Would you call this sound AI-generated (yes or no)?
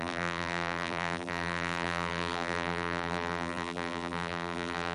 yes